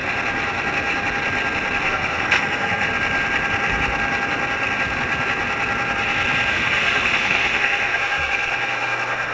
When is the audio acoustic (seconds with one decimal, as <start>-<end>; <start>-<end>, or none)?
0.0-1.8; 2.9-6.5

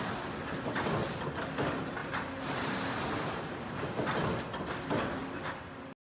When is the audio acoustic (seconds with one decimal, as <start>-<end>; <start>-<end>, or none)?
0.0-6.0